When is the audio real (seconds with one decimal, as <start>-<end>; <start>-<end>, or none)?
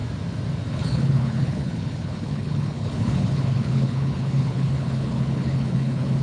0.0-0.7